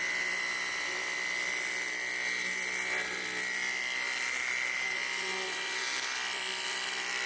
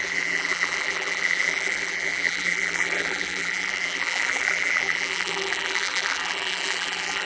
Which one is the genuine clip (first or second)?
first